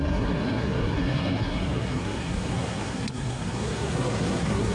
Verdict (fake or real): fake